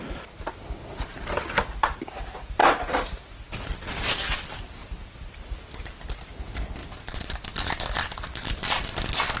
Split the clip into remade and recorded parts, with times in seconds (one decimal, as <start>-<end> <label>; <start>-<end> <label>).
0.0-2.6 recorded; 2.6-3.4 remade; 3.4-6.8 recorded; 6.8-7.5 remade; 7.5-8.3 recorded; 8.3-8.9 remade; 8.9-9.4 recorded